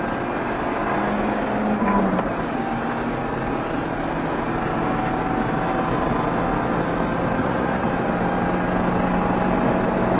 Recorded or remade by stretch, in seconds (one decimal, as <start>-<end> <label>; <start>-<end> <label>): 0.0-7.4 recorded; 7.4-7.9 remade; 7.9-10.2 recorded